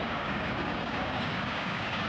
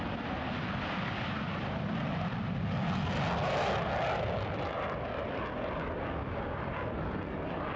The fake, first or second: first